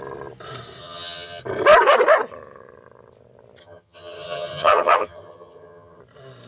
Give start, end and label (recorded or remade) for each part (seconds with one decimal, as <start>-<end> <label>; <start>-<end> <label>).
0.0-0.8 recorded; 0.8-1.4 remade; 1.4-3.6 recorded; 3.6-6.0 remade; 6.0-6.5 recorded